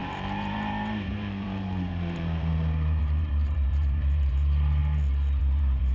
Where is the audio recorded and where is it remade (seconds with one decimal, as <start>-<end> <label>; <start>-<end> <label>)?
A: 0.0-4.8 remade; 4.8-5.4 recorded; 5.4-5.9 remade